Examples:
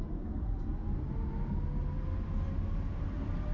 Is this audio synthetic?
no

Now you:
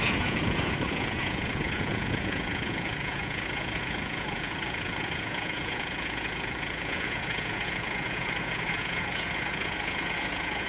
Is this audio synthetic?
yes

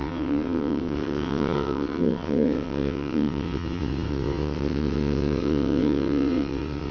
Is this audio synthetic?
yes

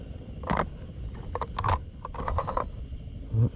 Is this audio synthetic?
no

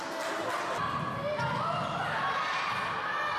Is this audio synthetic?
no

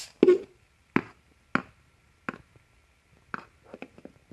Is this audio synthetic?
no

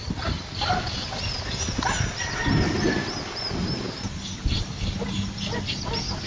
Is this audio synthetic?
no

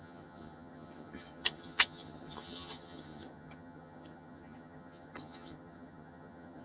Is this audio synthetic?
yes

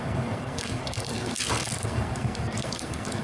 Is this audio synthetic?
yes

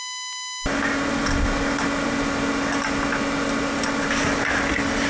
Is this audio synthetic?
no